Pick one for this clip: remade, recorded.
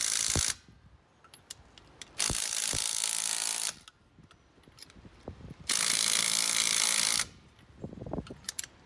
remade